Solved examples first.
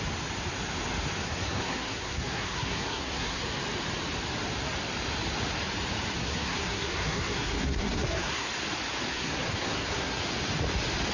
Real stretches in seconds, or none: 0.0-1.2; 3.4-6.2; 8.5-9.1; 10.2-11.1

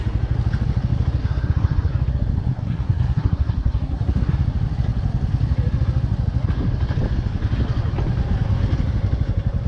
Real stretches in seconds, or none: 0.0-1.2; 1.9-2.5; 4.3-9.7

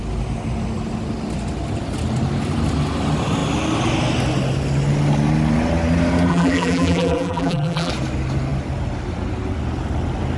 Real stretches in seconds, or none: 0.0-6.3; 7.9-10.4

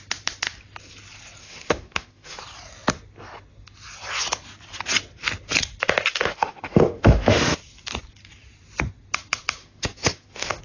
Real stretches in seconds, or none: 0.0-1.4; 2.4-6.1; 7.6-9.6

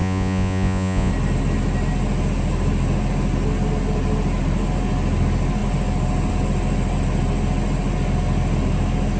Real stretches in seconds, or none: 1.1-9.2